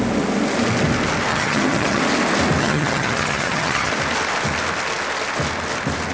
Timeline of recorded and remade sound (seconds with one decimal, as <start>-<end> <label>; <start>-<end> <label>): 0.0-1.3 recorded; 1.3-2.0 remade; 2.0-2.6 recorded; 2.6-3.9 remade; 3.9-6.1 recorded